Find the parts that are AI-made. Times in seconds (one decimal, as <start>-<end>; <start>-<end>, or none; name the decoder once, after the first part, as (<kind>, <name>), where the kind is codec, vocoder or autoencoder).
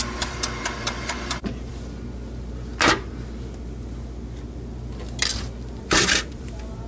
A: 0.0-1.7 (vocoder, BigVGAN v2); 5.8-6.9